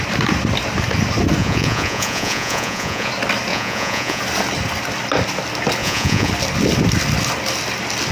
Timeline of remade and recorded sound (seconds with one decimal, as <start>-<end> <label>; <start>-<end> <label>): 0.0-1.4 recorded; 1.4-3.1 remade; 3.1-3.5 recorded; 3.5-4.2 remade; 4.2-5.8 recorded; 5.8-6.3 remade; 6.3-8.1 recorded